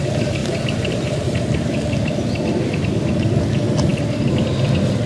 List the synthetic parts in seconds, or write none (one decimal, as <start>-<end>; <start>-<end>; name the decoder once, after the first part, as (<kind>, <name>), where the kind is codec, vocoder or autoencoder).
0.4-3.5 (vocoder, BigVGAN v2)